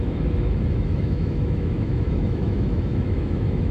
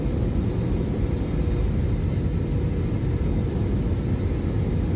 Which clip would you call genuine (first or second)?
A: second